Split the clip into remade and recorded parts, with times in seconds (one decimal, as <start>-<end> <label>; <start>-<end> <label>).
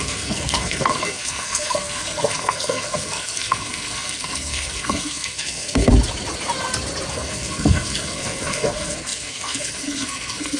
0.0-5.9 remade; 5.9-7.1 recorded; 7.1-10.6 remade